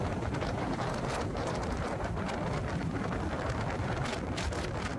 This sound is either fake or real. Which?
fake